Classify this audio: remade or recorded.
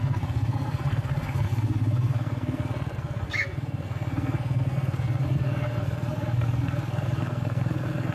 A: remade